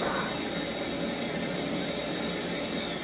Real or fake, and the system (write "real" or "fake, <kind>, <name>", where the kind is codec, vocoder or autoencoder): real